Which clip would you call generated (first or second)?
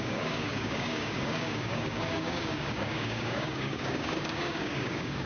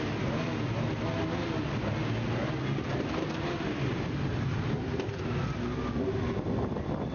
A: first